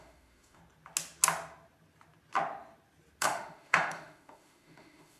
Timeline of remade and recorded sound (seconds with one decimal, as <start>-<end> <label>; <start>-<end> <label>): 0.0-0.6 remade; 0.6-3.2 recorded; 3.2-5.2 remade